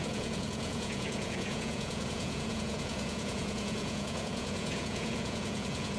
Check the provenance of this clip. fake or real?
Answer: fake